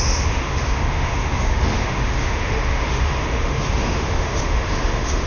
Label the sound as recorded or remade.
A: remade